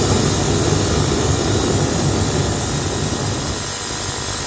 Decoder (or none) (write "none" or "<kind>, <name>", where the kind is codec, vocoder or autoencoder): none